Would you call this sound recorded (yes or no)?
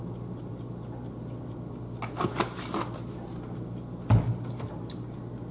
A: yes